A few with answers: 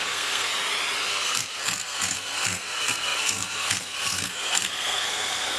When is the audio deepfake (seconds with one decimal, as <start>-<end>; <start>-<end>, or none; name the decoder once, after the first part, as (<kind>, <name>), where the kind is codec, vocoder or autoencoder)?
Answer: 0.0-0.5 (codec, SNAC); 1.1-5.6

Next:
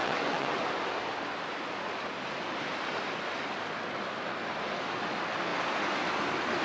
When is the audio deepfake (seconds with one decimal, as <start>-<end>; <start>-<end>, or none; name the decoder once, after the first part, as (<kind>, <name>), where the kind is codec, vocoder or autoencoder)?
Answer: 0.0-0.6 (vocoder, WaveNeXt)

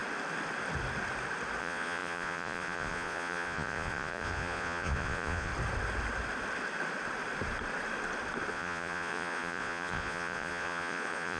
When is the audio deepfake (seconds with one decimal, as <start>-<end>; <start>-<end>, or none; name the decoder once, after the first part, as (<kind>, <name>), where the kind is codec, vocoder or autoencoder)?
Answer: 1.6-5.5 (vocoder, Vocos); 8.5-11.4

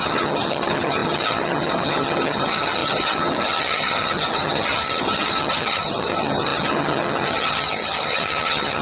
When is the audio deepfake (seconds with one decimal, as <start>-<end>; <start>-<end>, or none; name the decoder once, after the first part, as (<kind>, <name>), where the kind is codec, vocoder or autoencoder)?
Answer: 0.0-8.8 (vocoder, HiFi-GAN)

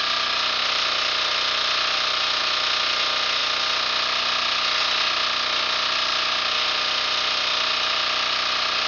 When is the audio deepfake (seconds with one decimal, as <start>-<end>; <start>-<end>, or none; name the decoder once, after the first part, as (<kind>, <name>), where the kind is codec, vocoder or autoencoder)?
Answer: 0.6-2.4 (vocoder, BigVGAN v2)

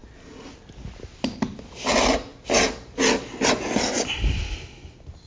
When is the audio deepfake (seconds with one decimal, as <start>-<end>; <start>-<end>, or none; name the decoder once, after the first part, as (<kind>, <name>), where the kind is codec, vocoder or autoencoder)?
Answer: none

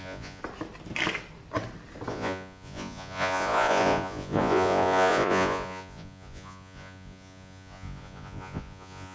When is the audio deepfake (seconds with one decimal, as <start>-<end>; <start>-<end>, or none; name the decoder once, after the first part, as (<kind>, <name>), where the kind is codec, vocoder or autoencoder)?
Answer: 0.0-0.4 (vocoder, Vocos); 2.1-9.1

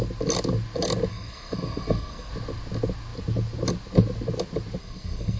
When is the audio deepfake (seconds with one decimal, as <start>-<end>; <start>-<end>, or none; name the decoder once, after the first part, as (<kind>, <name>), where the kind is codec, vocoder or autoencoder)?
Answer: 1.1-2.3 (codec, SNAC); 4.8-5.4